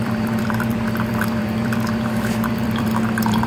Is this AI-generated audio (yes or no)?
yes